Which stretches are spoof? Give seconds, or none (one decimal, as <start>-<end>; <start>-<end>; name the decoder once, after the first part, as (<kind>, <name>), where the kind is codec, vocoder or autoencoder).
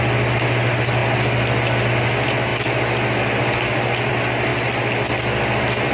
1.0-1.9 (vocoder, BigVGAN v2); 4.5-5.1